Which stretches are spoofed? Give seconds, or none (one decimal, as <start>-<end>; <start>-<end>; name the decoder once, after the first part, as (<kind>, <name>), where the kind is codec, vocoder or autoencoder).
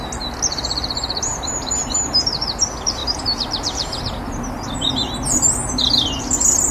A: none